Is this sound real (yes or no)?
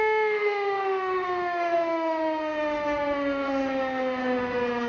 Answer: no